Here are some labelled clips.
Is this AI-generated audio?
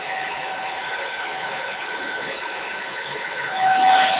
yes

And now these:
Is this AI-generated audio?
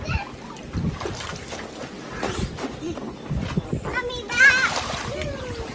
no